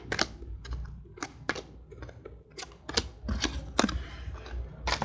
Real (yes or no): yes